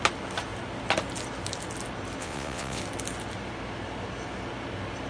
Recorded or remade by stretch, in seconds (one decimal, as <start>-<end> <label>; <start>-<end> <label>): 0.0-2.2 recorded; 2.2-2.8 remade; 2.8-5.1 recorded